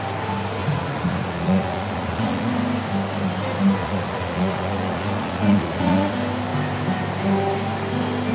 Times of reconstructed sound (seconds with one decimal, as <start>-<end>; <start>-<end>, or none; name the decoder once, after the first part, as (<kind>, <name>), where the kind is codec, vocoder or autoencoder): 0.6-2.5 (vocoder, Vocos); 3.8-6.1